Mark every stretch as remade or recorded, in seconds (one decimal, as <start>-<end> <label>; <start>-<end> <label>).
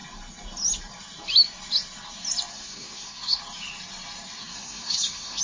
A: 0.0-2.5 recorded; 2.5-3.4 remade; 3.4-4.4 recorded; 4.4-5.4 remade